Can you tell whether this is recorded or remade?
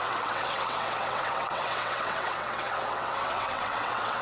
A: remade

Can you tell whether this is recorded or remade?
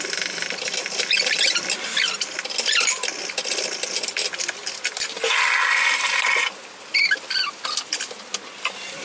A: recorded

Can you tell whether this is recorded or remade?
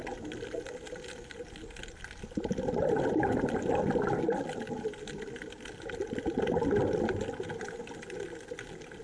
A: recorded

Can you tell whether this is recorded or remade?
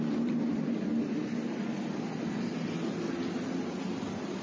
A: recorded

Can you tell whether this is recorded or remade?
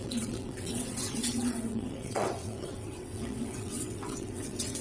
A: remade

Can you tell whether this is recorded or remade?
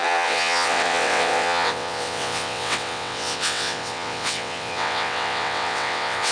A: remade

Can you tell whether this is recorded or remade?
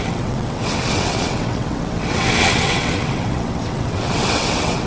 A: remade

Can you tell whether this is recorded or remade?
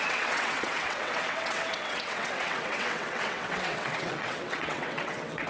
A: remade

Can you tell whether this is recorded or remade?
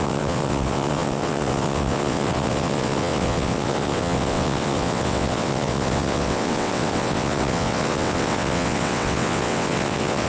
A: remade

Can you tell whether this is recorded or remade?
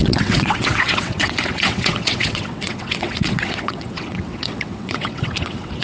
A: remade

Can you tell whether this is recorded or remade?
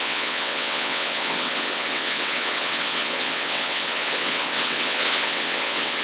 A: remade